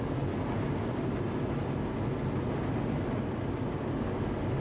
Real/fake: real